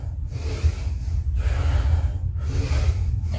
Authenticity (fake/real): real